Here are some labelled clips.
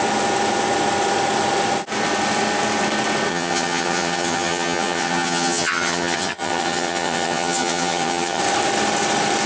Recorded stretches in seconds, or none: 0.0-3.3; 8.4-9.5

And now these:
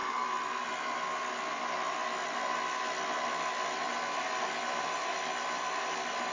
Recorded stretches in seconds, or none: 0.0-6.3

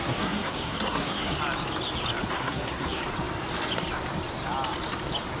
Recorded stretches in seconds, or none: 1.4-2.3; 3.0-5.4

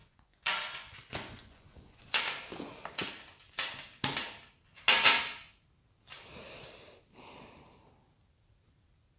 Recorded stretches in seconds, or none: 2.2-9.2

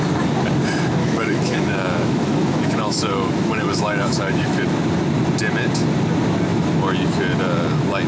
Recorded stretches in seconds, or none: 0.0-1.0; 4.6-8.1

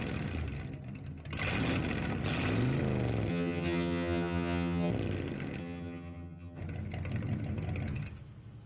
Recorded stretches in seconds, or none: 0.0-3.3; 4.9-5.6; 6.6-8.7

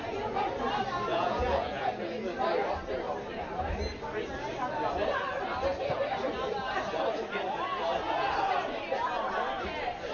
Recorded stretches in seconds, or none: 0.0-1.1; 1.9-10.1